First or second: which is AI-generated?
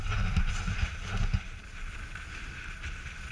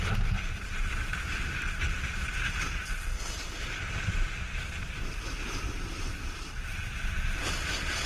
second